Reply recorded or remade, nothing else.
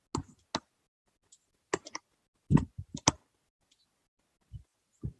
recorded